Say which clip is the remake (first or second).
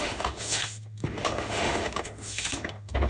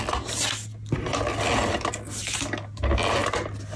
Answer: first